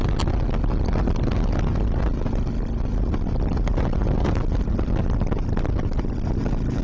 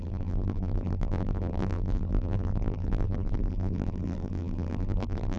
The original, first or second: first